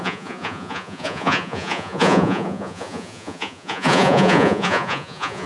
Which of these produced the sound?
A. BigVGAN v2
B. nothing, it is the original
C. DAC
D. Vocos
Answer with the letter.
D